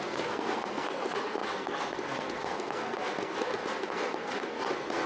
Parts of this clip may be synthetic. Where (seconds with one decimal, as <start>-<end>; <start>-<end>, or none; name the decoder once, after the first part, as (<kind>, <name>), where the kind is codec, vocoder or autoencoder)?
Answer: 0.0-5.1 (codec, SNAC)